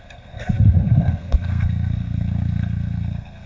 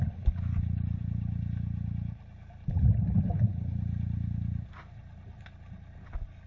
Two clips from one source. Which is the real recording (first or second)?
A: second